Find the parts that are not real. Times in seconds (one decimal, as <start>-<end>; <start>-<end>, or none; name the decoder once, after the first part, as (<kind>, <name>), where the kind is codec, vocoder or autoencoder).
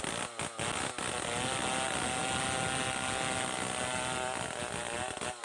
none